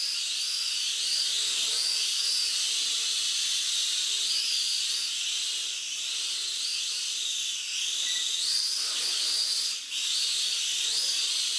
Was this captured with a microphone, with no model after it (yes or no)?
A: yes